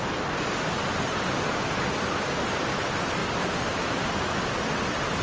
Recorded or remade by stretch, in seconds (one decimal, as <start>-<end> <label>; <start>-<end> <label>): 0.0-5.2 recorded